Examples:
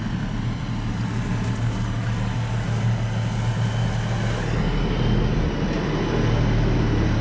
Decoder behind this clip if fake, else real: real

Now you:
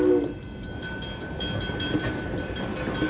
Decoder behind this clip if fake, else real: real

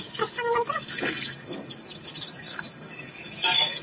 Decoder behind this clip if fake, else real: fake, codec, DAC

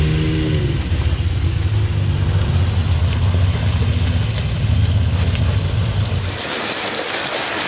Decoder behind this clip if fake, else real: real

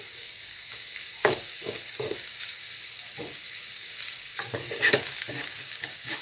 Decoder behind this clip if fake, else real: fake, codec, DAC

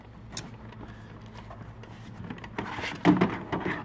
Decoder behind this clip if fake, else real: real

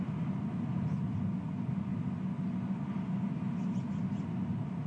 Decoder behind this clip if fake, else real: real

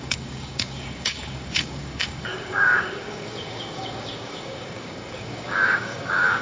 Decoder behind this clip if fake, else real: fake, codec, DAC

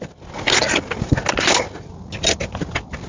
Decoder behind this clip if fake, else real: real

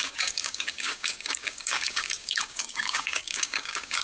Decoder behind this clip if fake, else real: fake, codec, DAC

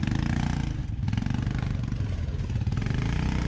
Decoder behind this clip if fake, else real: real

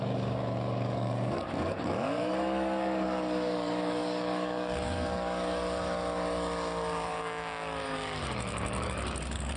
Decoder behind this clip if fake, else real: fake, codec, DAC